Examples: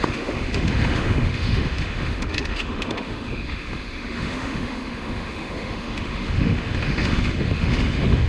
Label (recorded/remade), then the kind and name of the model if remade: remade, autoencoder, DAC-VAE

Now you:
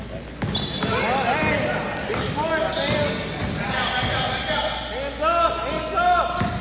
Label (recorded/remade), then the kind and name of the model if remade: recorded